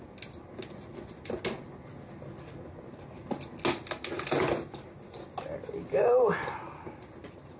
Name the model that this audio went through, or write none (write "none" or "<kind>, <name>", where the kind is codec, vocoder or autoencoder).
none